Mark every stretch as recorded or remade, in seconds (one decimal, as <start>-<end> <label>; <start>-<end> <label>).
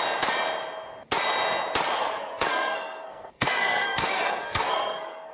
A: 0.0-2.0 recorded; 2.0-5.3 remade